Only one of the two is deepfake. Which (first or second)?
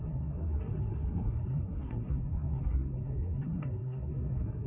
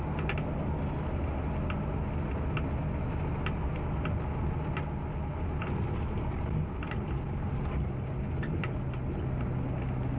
first